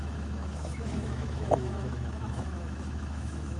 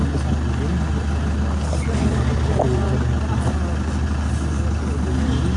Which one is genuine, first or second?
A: second